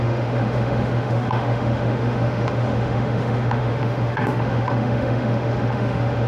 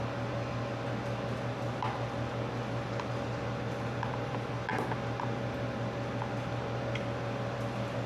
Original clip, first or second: second